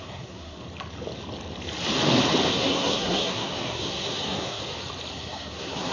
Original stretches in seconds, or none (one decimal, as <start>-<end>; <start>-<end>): 0.6-2.5; 4.6-5.1